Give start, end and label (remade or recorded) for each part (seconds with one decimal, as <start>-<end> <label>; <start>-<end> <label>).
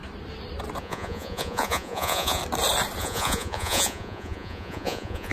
0.0-0.8 recorded; 0.8-2.4 remade; 2.4-3.0 recorded; 3.0-5.3 remade